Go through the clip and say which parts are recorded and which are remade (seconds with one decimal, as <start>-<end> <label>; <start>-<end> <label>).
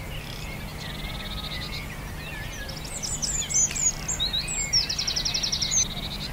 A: 0.0-6.3 recorded